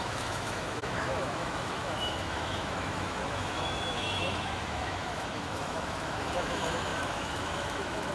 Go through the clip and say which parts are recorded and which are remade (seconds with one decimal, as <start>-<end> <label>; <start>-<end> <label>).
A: 0.0-8.1 remade